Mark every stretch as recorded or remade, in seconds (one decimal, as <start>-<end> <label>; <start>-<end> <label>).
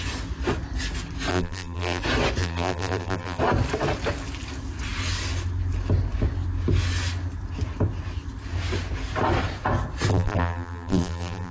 0.0-1.3 recorded; 1.3-2.0 remade; 2.0-2.4 recorded; 2.4-3.4 remade; 3.4-10.1 recorded; 10.1-11.5 remade